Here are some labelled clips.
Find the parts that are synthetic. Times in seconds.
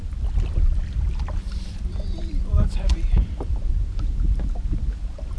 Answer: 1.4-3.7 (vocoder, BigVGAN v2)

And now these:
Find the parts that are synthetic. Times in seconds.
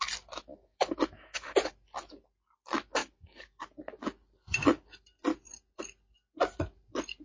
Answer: 0.5-1.7 (autoencoder, DAC-VAE); 3.0-3.8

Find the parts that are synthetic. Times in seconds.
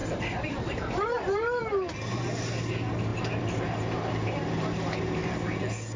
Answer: 0.0-1.6 (vocoder, BigVGAN v2); 3.1-5.6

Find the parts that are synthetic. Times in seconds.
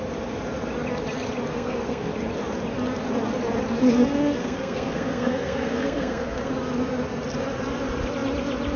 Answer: 1.5-2.1 (codec, SNAC); 4.4-6.5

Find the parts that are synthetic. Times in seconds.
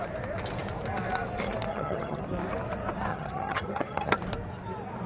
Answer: 1.7-2.2 (vocoder, HiFi-GAN); 3.1-4.1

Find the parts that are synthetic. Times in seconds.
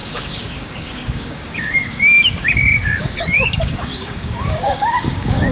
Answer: 0.0-5.5 (codec, DAC)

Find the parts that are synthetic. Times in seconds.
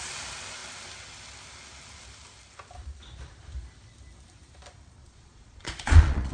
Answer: 5.0-6.3 (vocoder, Vocos)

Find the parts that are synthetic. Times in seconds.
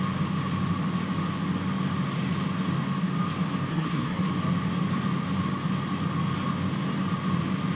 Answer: 3.7-4.3 (codec, SNAC)